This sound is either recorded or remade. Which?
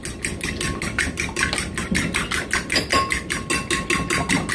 recorded